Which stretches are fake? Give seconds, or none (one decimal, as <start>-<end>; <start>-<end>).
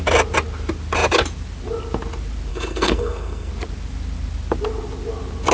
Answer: 2.5-3.5